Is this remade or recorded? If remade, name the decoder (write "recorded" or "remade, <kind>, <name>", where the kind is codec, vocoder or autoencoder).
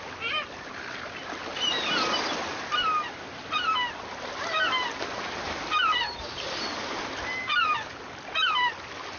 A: recorded